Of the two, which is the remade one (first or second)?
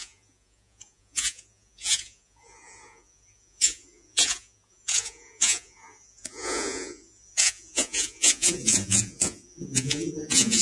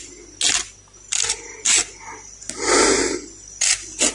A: first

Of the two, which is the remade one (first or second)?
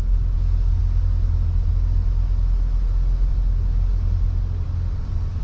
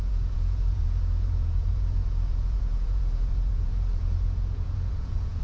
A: second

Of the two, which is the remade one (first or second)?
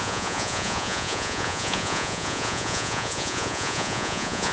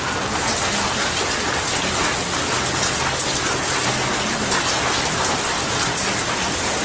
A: first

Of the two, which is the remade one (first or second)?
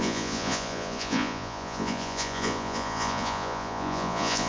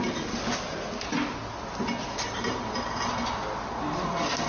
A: first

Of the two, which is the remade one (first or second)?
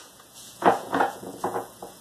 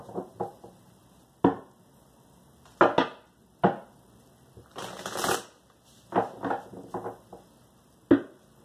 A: first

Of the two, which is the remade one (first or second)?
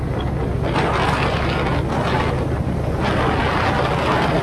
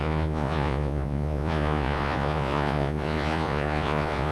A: second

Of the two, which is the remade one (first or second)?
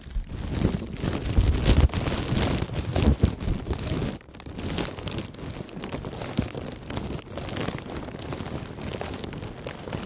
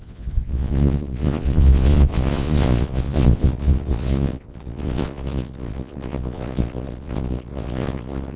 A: second